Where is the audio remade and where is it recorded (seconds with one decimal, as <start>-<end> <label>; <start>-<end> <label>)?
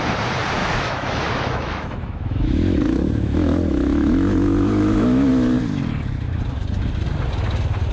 0.0-0.6 recorded; 0.6-5.3 remade; 5.3-7.9 recorded